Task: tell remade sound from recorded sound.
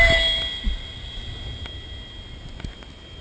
recorded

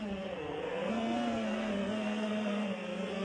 remade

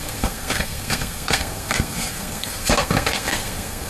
remade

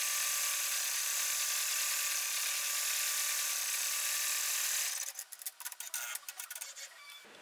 recorded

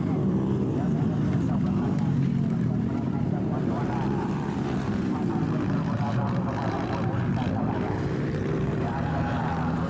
remade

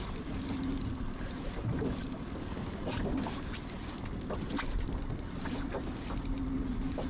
recorded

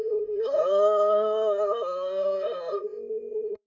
remade